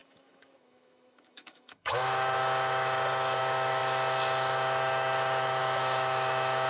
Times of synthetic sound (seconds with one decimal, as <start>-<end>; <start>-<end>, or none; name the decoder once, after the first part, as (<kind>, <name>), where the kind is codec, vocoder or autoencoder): 0.0-6.7 (autoencoder, DAC-VAE)